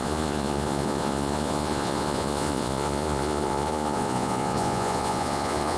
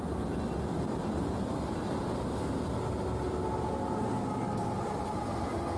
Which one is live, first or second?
second